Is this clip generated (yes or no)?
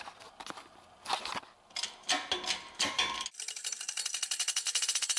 no